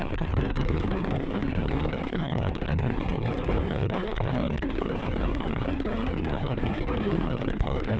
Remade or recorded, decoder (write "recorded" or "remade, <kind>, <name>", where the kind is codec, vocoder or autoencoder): remade, codec, SNAC